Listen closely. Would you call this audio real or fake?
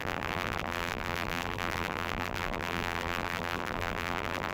fake